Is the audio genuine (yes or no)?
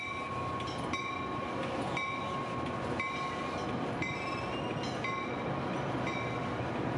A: yes